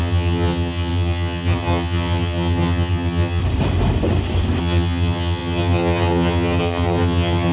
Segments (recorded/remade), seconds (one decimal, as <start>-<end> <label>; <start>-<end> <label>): 0.0-3.4 remade; 3.4-4.6 recorded; 4.6-7.5 remade